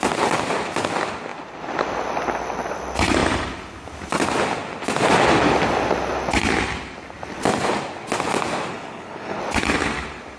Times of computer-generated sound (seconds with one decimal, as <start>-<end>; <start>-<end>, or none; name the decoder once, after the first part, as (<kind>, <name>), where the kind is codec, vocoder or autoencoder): 8.7-9.4 (codec, HILCodec)